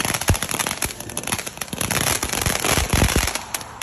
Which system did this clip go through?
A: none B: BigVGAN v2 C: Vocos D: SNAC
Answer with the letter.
A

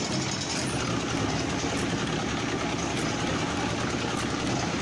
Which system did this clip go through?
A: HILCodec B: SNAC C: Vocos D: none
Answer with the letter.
D